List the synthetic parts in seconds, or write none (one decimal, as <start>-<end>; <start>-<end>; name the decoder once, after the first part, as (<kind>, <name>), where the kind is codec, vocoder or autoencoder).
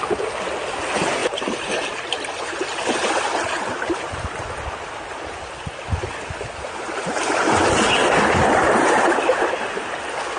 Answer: 1.2-1.7 (vocoder, BigVGAN v2)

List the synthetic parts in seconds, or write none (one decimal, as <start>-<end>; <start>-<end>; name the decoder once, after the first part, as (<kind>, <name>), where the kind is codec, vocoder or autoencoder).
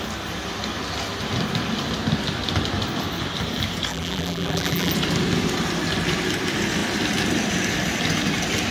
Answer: 3.9-4.9 (vocoder, BigVGAN v2)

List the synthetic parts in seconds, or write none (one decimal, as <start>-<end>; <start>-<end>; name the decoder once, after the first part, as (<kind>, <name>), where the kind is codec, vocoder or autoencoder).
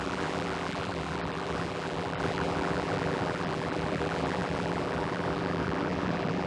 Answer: 0.0-6.5 (vocoder, BigVGAN v2)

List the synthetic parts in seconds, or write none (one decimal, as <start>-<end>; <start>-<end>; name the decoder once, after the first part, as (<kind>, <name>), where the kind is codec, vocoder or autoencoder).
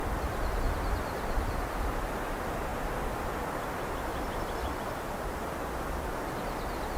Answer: 2.7-3.3 (vocoder, BigVGAN v2); 4.1-4.7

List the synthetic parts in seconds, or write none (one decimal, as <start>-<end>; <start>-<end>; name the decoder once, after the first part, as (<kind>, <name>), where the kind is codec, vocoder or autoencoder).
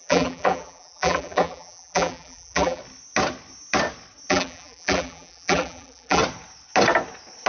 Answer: 0.0-2.8 (vocoder, BigVGAN v2); 4.3-6.2